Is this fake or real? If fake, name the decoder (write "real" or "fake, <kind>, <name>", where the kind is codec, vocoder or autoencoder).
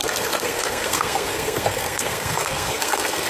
fake, codec, SNAC